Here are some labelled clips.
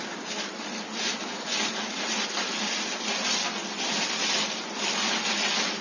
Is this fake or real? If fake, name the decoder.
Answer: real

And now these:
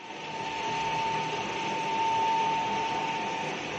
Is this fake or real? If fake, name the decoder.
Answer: real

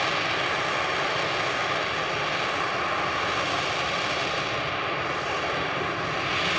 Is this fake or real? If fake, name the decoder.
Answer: real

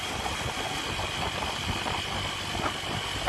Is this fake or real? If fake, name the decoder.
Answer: real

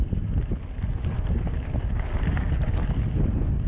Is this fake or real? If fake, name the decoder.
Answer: real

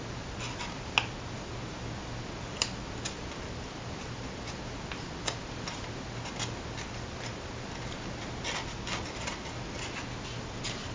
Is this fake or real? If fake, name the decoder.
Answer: real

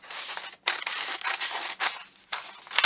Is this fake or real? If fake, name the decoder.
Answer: real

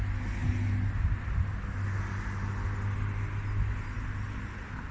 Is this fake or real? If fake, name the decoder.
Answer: real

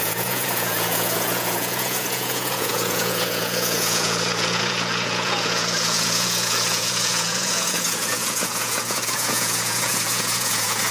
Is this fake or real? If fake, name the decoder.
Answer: fake, vocoder, Vocos